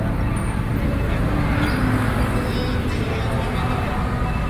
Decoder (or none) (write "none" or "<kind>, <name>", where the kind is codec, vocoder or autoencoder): none